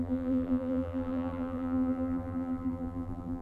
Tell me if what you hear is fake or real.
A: fake